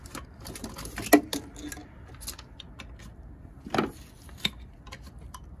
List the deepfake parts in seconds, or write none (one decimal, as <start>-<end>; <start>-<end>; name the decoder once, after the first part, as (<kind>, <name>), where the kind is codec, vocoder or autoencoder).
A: none